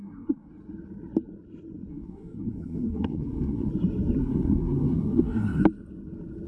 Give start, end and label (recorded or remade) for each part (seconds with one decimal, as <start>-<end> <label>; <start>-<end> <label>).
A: 0.0-0.5 remade; 0.5-1.9 recorded; 1.9-3.7 remade; 3.7-4.2 recorded; 4.2-5.6 remade; 5.6-6.5 recorded